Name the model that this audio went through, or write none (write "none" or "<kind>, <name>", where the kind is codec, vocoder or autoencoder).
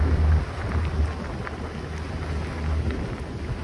none